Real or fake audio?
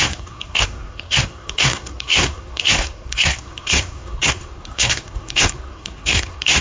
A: fake